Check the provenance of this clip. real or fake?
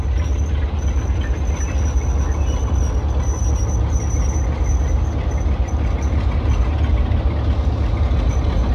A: real